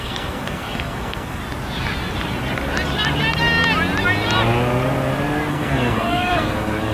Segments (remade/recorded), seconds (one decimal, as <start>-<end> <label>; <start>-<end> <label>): 0.0-1.4 remade; 1.4-5.5 recorded; 5.5-6.9 remade